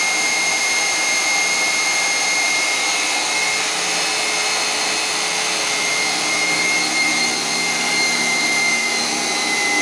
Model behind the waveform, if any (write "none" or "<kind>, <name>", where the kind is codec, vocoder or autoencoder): vocoder, BigVGAN v2